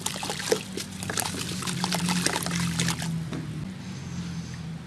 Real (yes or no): yes